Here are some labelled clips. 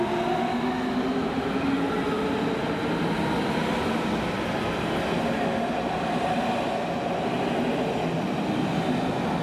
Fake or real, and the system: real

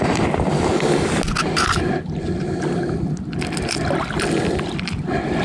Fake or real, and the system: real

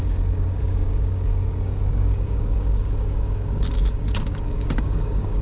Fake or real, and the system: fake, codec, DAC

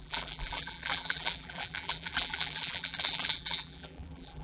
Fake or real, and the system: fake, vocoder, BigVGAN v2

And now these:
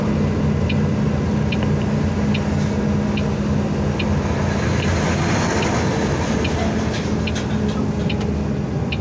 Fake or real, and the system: real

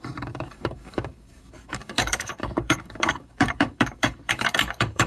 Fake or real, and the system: fake, codec, DAC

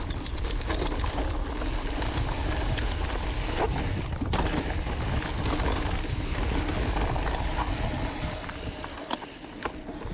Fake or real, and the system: real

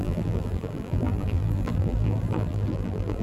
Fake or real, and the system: fake, vocoder, BigVGAN v2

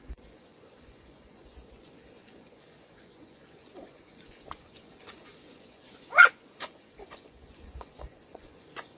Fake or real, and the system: fake, vocoder, Vocos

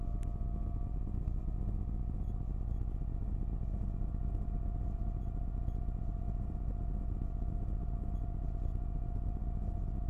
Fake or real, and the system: real